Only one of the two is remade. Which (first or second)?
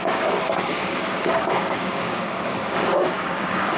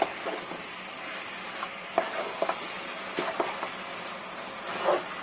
first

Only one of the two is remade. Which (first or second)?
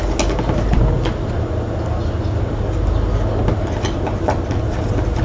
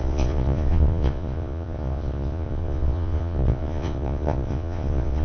second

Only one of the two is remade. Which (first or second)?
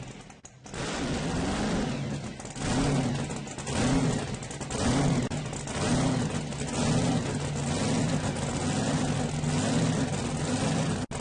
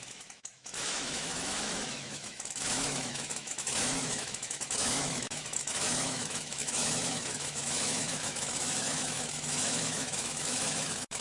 second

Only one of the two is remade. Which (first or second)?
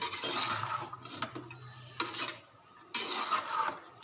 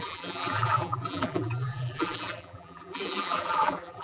second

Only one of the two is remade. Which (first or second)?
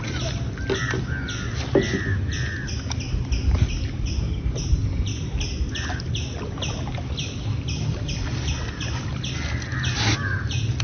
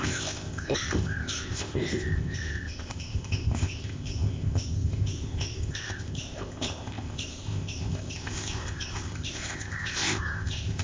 second